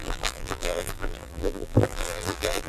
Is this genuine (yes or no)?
no